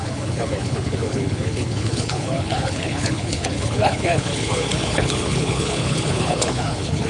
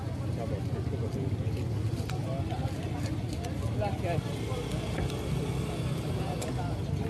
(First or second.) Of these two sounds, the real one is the second